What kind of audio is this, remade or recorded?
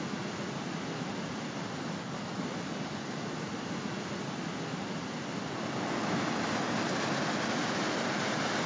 recorded